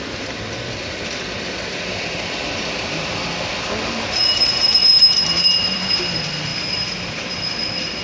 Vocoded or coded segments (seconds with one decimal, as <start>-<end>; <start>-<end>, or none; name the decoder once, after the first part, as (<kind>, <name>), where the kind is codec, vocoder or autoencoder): none